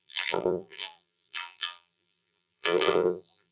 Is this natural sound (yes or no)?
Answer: no